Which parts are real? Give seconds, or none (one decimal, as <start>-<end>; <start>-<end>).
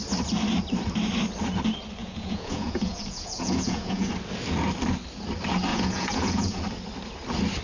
0.0-2.0; 4.1-5.7; 6.6-7.6